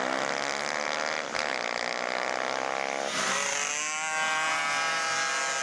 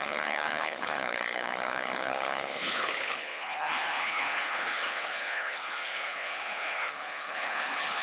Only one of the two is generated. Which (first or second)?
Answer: second